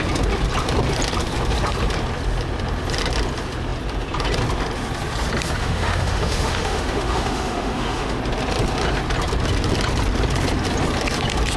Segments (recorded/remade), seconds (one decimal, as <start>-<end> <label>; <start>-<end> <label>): 0.0-5.6 recorded; 5.6-8.2 remade; 8.2-11.6 recorded

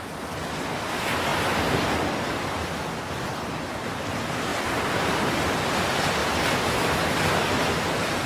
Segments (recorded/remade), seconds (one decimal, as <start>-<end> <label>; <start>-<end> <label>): 0.0-4.5 recorded; 4.5-5.8 remade; 5.8-8.3 recorded

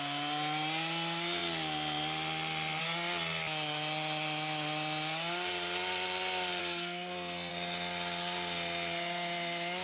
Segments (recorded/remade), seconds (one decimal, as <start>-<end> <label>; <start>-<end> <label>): 0.0-6.6 recorded; 6.6-7.5 remade; 7.5-9.8 recorded

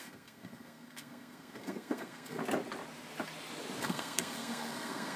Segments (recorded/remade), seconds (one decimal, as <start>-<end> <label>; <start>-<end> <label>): 0.0-2.4 remade; 2.4-3.8 recorded; 3.8-5.2 remade

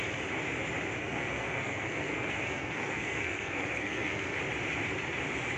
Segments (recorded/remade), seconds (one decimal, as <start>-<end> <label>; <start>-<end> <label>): 0.0-1.0 recorded; 1.0-4.4 remade; 4.4-5.6 recorded

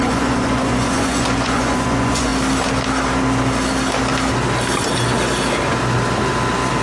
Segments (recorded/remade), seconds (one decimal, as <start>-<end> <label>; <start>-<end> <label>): 0.0-2.3 remade; 2.3-6.8 recorded

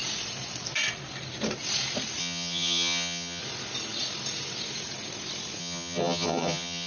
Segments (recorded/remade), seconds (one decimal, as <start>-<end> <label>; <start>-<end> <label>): 0.0-2.2 recorded; 2.2-3.4 remade; 3.4-5.6 recorded; 5.6-6.9 remade

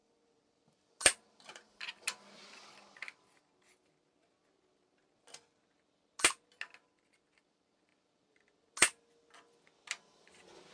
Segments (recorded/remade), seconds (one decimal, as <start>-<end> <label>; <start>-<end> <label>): 0.0-10.7 recorded